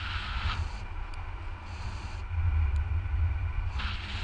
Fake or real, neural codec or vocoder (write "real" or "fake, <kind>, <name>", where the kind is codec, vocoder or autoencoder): real